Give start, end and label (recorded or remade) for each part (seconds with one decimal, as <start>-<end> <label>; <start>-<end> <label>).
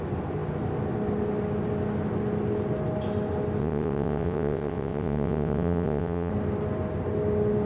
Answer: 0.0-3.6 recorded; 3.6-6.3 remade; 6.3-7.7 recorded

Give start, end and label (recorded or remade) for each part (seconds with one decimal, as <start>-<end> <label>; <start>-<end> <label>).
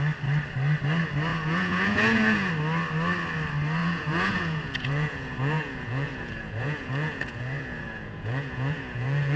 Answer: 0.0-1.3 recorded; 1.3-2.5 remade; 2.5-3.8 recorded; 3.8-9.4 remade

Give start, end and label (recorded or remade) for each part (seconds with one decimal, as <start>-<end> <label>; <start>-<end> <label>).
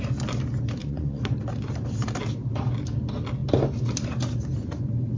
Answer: 0.0-0.8 recorded; 0.8-1.4 remade; 1.4-5.2 recorded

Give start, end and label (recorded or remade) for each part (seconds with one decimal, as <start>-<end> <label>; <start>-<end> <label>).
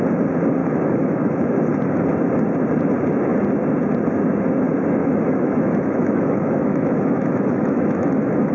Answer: 0.0-0.6 recorded; 0.6-1.6 remade; 1.6-5.0 recorded; 5.0-8.5 remade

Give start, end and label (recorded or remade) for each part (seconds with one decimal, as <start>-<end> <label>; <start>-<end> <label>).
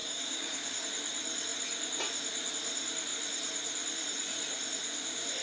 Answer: 0.0-0.8 remade; 0.8-5.4 recorded